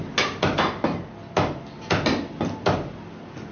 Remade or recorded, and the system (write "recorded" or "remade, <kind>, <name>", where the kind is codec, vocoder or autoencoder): recorded